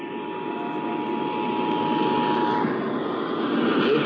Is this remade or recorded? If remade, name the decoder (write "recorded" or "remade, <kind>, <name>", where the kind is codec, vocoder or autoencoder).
recorded